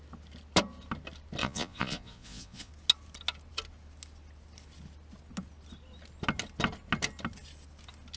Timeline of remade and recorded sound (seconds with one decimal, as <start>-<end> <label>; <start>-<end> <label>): 0.0-1.4 recorded; 1.4-2.7 remade; 2.7-8.2 recorded